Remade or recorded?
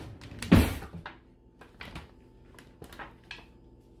recorded